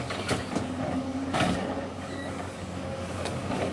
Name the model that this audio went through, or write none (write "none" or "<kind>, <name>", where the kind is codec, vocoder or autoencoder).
codec, DAC